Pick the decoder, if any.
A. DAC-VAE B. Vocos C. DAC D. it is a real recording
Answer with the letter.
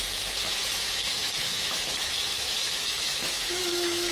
A